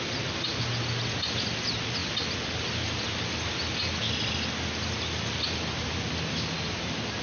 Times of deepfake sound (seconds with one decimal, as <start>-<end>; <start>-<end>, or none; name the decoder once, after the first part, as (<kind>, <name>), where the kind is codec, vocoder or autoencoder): none